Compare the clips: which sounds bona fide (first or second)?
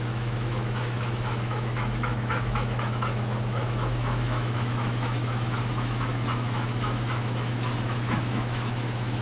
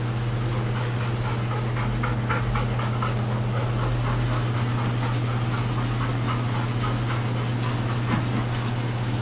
second